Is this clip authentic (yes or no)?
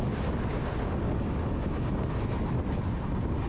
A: yes